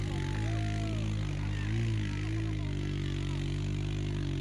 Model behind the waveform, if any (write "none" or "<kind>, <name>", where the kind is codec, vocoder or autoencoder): none